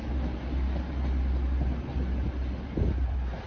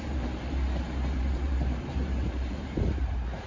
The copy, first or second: second